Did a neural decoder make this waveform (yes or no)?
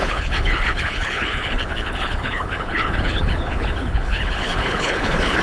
yes